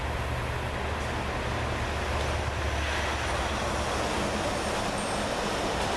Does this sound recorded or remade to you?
recorded